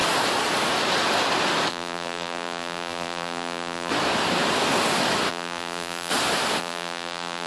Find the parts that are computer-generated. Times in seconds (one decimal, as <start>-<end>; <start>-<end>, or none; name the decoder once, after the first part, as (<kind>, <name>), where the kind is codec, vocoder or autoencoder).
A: 1.7-3.9 (vocoder, BigVGAN v2); 5.3-6.1; 6.6-7.5